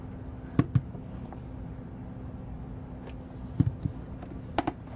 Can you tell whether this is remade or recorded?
recorded